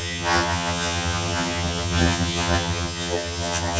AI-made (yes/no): yes